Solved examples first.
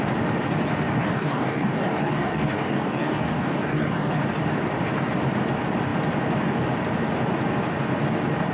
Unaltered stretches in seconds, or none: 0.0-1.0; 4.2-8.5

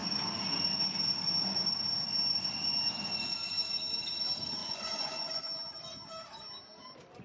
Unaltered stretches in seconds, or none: 0.0-4.6; 5.4-7.2

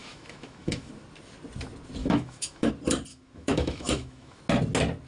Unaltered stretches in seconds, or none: 0.9-2.0; 2.7-3.1; 4.4-5.1

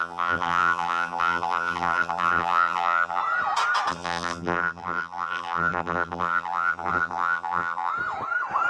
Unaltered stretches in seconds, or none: 3.2-3.9; 7.9-8.7

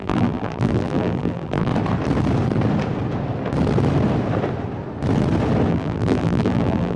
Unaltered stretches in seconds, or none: 1.7-5.7

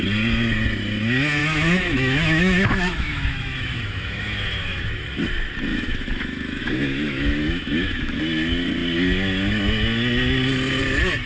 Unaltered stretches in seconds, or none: 0.0-1.4; 5.2-5.7; 8.2-11.3